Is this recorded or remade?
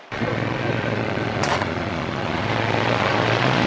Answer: remade